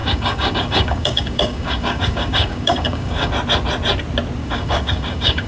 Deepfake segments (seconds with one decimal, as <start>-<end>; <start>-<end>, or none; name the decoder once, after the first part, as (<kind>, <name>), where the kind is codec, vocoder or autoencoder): 0.0-3.3 (codec, DAC); 4.4-5.5